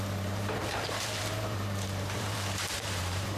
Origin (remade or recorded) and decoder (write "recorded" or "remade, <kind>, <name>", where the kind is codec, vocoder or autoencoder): remade, vocoder, BigVGAN v2